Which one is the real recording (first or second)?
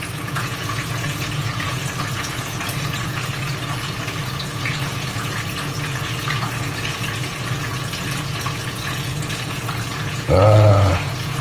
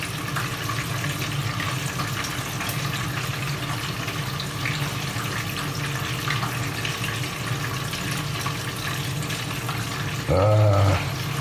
second